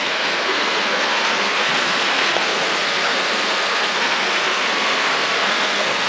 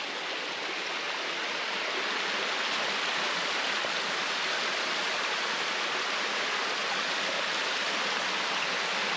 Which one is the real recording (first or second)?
second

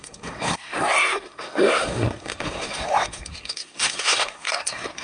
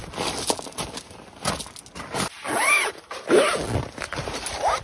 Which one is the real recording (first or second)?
second